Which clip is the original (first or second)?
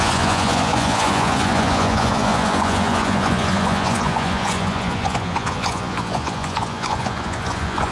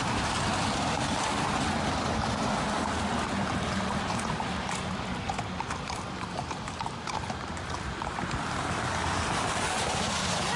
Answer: second